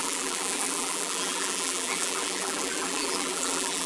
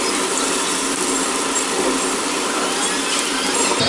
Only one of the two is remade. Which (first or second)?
first